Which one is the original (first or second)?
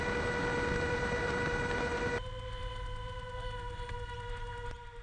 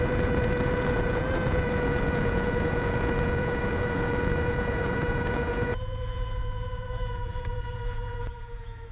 first